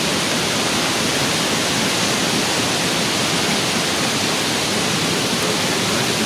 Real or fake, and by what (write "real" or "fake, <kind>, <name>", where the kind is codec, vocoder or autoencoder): real